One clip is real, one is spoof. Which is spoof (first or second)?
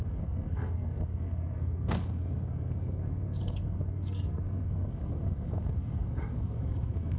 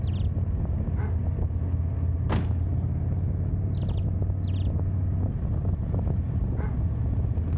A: first